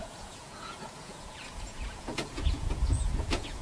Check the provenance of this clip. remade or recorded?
remade